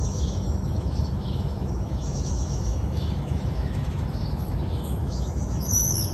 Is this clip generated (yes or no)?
yes